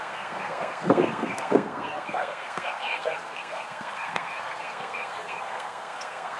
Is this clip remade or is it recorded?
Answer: remade